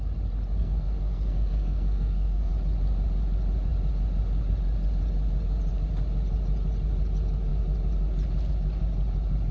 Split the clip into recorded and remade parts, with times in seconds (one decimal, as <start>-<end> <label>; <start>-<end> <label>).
0.0-0.6 recorded; 0.6-2.5 remade; 2.5-9.5 recorded